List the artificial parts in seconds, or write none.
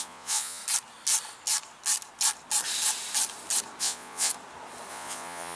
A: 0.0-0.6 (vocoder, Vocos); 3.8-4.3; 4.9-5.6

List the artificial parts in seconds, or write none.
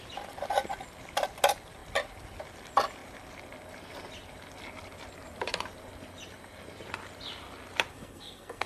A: 7.9-8.7 (codec, SNAC)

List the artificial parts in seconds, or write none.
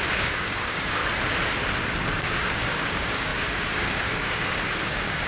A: 0.0-1.0 (codec, DAC); 2.2-5.3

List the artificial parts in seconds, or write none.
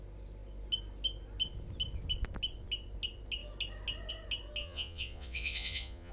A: 4.6-6.1 (vocoder, Vocos)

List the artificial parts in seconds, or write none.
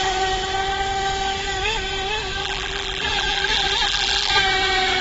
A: 2.4-4.3 (vocoder, BigVGAN v2)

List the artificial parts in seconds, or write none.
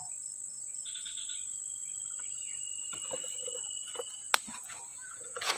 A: 4.9-5.6 (vocoder, Vocos)